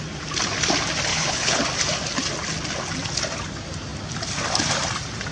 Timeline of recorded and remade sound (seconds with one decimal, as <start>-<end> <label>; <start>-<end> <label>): 0.0-1.1 recorded; 1.1-1.6 remade; 1.6-5.3 recorded